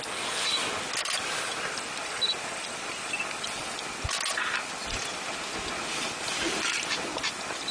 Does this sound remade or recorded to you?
recorded